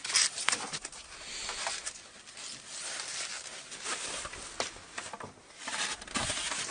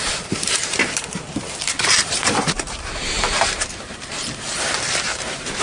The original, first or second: first